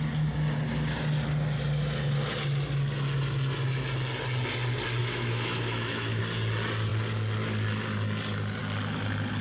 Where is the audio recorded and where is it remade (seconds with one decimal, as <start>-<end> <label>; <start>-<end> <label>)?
0.0-5.0 recorded; 5.0-6.2 remade; 6.2-9.4 recorded